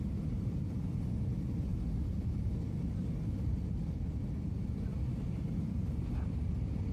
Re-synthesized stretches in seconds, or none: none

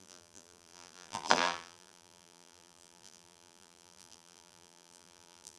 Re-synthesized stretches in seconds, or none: 0.0-5.6 (vocoder, BigVGAN v2)

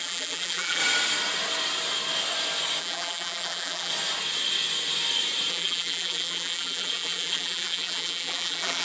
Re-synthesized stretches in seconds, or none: 0.0-0.8 (vocoder, BigVGAN v2); 2.8-3.9; 5.5-8.8

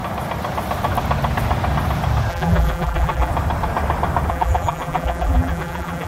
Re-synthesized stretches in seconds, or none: 2.3-3.3 (vocoder, BigVGAN v2); 4.3-6.1